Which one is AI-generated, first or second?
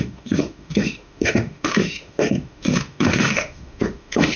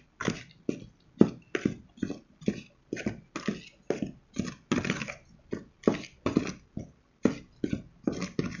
first